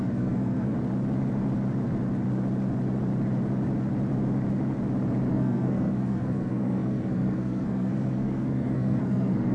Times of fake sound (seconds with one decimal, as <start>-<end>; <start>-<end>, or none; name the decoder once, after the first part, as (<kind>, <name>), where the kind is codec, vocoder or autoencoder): 0.0-0.7 (codec, SNAC); 5.3-9.5